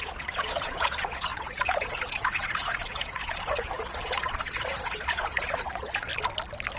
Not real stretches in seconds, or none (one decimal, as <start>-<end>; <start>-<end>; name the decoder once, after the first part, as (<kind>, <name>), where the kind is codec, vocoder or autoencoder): 0.0-6.1 (vocoder, Vocos)